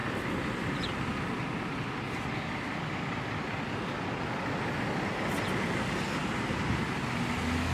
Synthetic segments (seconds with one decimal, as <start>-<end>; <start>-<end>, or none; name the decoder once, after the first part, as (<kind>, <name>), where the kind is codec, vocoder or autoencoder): 6.2-7.0 (vocoder, BigVGAN v2)